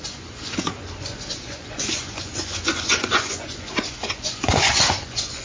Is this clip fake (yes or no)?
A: yes